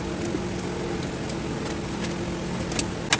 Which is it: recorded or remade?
recorded